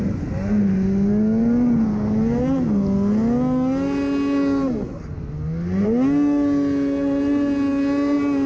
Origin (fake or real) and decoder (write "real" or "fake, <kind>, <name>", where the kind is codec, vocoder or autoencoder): real